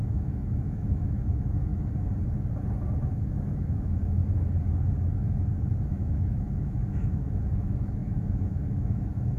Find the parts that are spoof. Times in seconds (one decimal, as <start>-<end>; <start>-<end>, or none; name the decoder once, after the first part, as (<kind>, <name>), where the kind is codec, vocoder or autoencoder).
0.0-1.7 (autoencoder, DAC-VAE); 3.0-4.2; 5.9-9.4